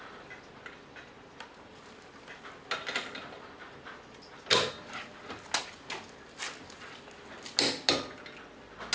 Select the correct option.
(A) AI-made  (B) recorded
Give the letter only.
B